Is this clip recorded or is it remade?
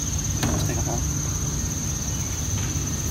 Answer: recorded